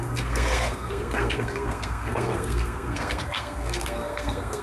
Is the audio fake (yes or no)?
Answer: yes